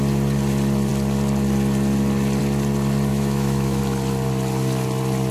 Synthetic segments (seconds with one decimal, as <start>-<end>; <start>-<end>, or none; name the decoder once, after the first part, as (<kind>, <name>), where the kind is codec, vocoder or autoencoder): 3.1-3.8 (autoencoder, DAC-VAE)